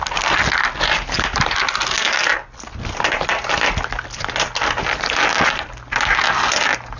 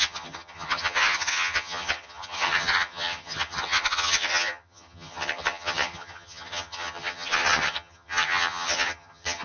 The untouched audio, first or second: first